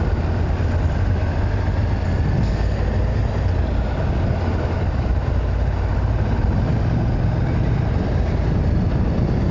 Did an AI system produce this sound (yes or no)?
no